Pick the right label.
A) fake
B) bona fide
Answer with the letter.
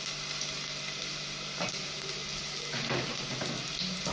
B